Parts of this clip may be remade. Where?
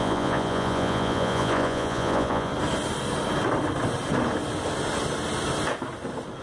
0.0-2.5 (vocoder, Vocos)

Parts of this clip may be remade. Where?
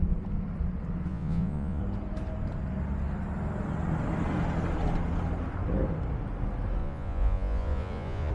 1.1-1.8 (vocoder, Vocos); 6.8-8.3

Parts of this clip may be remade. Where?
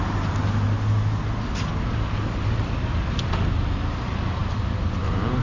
4.4-5.4 (vocoder, BigVGAN v2)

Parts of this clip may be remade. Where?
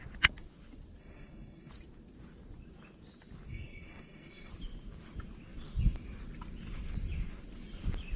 1.0-1.7 (codec, SNAC); 3.5-4.5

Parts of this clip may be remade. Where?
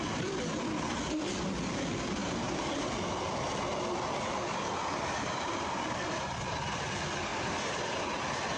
2.2-2.9 (vocoder, BigVGAN v2); 4.8-6.3; 7.3-7.8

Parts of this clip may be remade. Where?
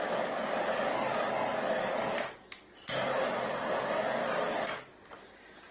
1.5-3.6 (vocoder, BigVGAN v2)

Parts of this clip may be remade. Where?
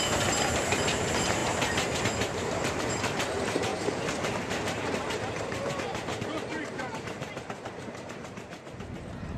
0.0-9.4 (vocoder, BigVGAN v2)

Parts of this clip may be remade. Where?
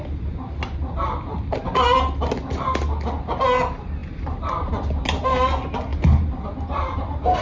none